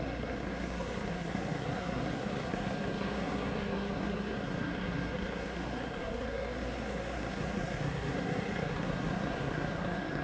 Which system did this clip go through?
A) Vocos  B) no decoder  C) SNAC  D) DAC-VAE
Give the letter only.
C